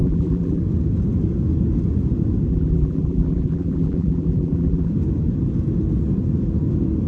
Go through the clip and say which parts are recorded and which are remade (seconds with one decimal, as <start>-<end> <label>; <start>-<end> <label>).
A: 0.0-0.6 remade; 0.6-2.5 recorded; 2.5-4.9 remade; 4.9-7.1 recorded